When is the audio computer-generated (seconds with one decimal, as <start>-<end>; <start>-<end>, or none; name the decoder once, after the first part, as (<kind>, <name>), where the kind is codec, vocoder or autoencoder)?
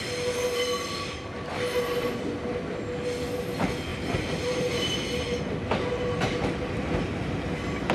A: 3.9-5.3 (vocoder, BigVGAN v2)